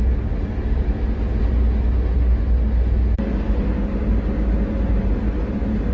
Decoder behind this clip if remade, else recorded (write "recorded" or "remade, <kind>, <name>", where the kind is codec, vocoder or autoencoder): recorded